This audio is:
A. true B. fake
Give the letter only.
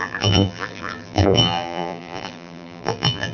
B